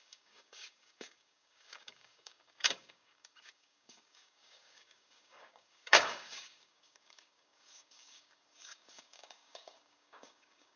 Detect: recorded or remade remade